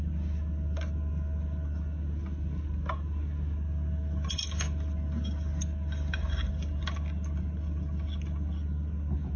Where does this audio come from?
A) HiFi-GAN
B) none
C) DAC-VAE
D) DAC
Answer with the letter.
B